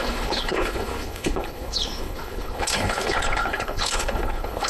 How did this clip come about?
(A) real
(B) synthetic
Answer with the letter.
B